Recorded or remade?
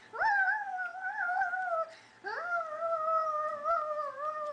recorded